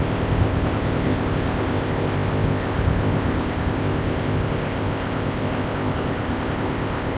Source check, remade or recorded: remade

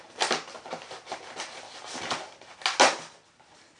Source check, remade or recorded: recorded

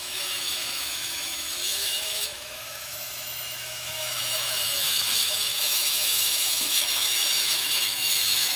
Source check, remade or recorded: remade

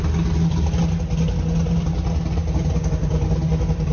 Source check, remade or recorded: recorded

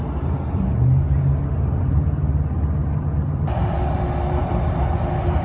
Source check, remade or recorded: recorded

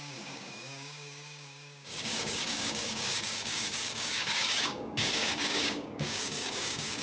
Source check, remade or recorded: remade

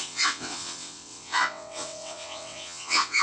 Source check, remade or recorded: remade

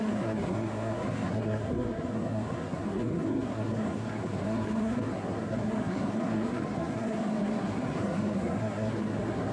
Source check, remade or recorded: remade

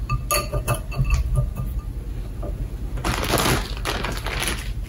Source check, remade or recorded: recorded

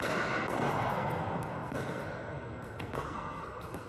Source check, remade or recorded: remade